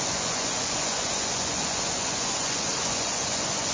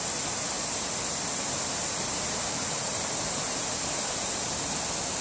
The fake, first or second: first